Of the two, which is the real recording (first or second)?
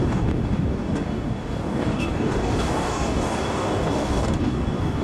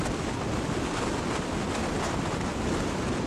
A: second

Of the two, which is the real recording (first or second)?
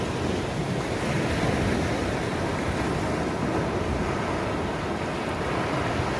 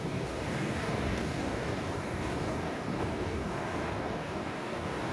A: first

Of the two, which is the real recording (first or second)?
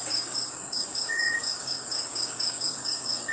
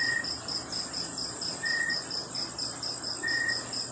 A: second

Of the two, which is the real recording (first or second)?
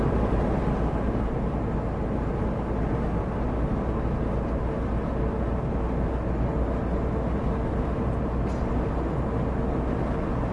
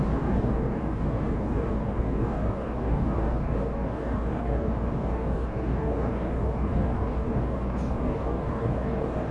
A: first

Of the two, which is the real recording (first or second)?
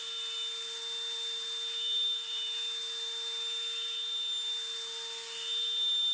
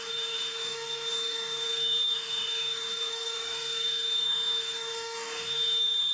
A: first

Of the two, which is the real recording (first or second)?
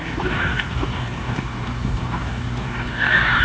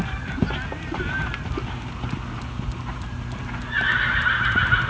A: second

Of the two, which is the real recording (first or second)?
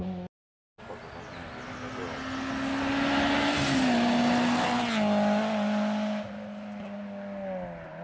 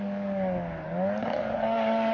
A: first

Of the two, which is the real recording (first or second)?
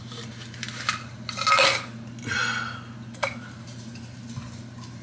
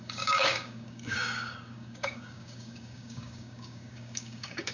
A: first